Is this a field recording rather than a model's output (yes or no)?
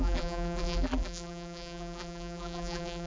no